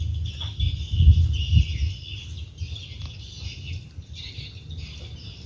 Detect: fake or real real